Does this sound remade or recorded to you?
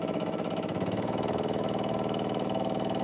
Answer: remade